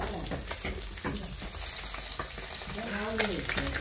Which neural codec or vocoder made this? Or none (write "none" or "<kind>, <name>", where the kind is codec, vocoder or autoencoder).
none